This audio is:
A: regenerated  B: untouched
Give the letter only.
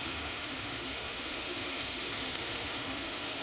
A